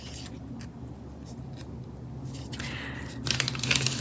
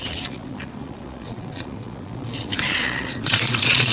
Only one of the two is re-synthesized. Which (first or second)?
second